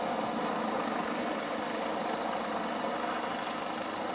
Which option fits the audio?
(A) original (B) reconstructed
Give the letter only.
A